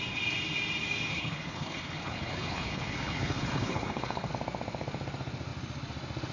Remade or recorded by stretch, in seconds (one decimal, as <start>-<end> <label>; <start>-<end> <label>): 0.0-1.1 recorded; 1.1-4.3 remade; 4.3-6.3 recorded